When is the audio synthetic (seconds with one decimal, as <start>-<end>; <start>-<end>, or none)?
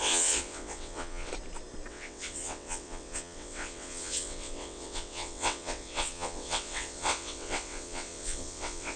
0.0-1.3; 1.9-9.0